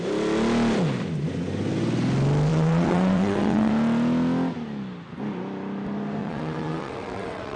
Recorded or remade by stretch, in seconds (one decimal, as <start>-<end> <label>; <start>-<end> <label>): 0.0-2.5 recorded; 2.5-3.7 remade; 3.7-6.2 recorded; 6.2-7.6 remade

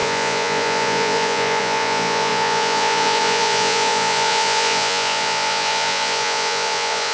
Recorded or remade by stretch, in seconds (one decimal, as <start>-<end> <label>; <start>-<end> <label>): 0.0-7.1 remade

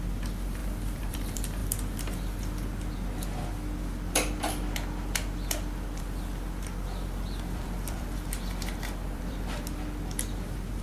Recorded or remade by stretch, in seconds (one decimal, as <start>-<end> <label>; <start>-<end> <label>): 0.0-1.6 remade; 1.6-6.0 recorded; 6.0-10.8 remade

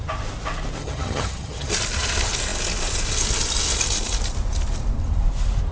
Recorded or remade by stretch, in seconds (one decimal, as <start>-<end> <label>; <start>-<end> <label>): 0.0-0.8 recorded; 0.8-1.7 remade; 1.7-5.7 recorded

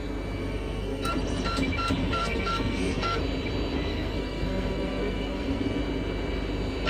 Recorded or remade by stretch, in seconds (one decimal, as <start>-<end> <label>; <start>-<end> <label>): 0.0-0.4 recorded; 0.4-1.1 remade; 1.1-2.0 recorded; 2.0-3.2 remade; 3.2-3.9 recorded; 3.9-5.8 remade; 5.8-6.9 recorded

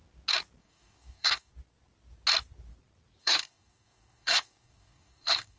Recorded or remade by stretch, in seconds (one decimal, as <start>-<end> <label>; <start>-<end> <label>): 0.0-0.6 recorded; 0.6-1.5 remade; 1.5-3.2 recorded; 3.2-5.6 remade

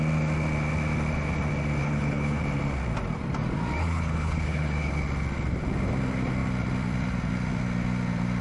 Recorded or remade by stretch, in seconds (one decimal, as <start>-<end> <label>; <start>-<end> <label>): 0.0-1.8 recorded; 1.8-2.4 remade; 2.4-3.8 recorded; 3.8-4.9 remade; 4.9-8.4 recorded

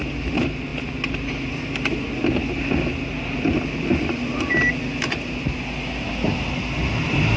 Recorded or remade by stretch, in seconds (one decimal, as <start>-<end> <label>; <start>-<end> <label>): 0.0-7.4 recorded